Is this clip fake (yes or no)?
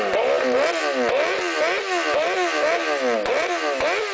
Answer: no